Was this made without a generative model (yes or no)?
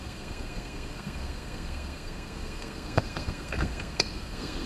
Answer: no